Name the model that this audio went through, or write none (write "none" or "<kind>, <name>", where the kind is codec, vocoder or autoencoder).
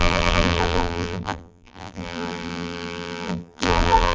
vocoder, BigVGAN v2